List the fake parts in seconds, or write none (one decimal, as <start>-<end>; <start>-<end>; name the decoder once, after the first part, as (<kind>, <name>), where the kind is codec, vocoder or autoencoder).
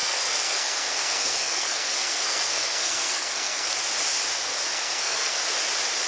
0.0-3.7 (codec, SNAC); 4.7-5.4